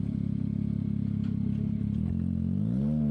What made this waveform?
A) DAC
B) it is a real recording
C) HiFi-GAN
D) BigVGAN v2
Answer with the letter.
B